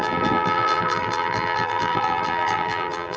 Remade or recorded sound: remade